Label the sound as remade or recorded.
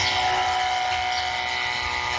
recorded